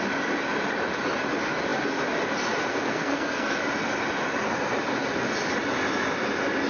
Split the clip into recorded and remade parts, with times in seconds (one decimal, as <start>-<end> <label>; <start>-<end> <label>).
0.0-2.7 recorded; 2.7-3.6 remade; 3.6-6.7 recorded

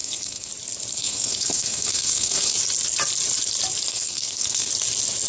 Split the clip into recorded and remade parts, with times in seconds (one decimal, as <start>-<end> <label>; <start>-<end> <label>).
0.0-0.5 remade; 0.5-0.9 recorded; 0.9-2.6 remade; 2.6-3.9 recorded; 3.9-4.7 remade; 4.7-5.3 recorded

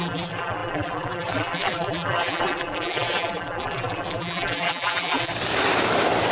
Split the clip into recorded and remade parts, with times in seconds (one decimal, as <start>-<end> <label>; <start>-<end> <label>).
0.0-5.3 remade; 5.3-6.3 recorded